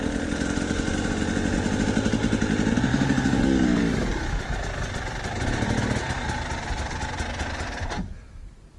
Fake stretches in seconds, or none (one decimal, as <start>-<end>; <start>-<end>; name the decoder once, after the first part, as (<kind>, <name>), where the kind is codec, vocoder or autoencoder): 2.9-3.8 (codec, DAC)